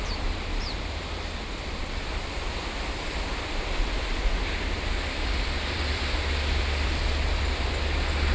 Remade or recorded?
remade